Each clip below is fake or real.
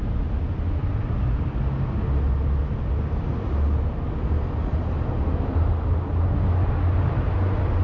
real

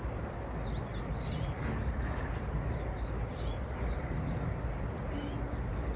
real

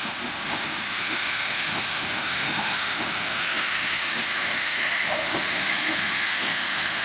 fake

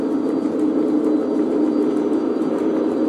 real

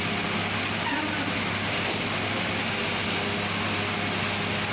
real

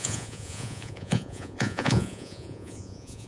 fake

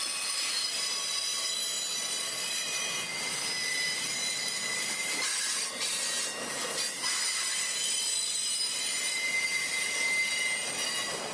real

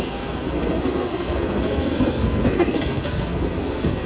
fake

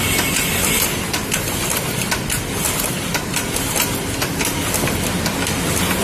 real